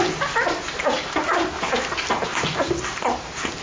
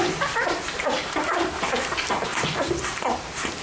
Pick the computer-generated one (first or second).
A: second